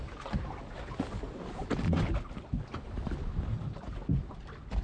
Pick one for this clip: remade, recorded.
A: recorded